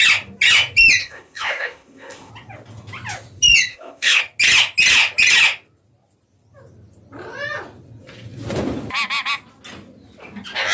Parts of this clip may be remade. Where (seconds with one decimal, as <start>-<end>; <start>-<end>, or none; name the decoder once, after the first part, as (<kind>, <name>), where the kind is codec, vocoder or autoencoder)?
1.0-2.3 (codec, ZipCodec); 3.7-4.2